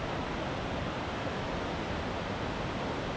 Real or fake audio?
real